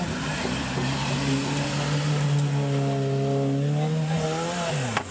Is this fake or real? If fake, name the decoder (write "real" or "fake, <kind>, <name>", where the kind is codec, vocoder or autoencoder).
real